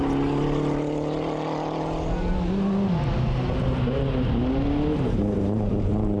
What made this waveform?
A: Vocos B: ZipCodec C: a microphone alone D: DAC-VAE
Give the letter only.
C